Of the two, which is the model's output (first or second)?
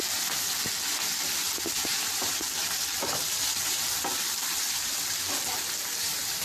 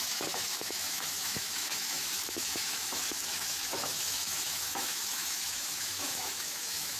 second